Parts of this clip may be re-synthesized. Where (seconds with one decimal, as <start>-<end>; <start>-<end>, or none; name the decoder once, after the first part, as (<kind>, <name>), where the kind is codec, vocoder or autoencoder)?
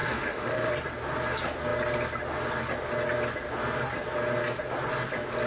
0.0-0.7 (autoencoder, DAC-VAE)